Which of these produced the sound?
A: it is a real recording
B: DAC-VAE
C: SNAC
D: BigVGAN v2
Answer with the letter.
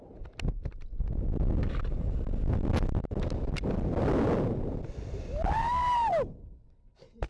A